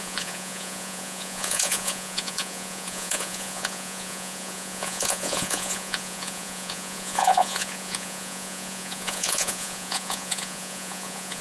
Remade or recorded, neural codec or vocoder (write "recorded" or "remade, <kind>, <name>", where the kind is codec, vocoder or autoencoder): remade, vocoder, Vocos